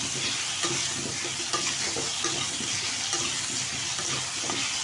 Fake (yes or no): no